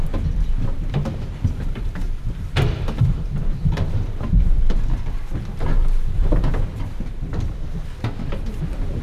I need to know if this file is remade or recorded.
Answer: remade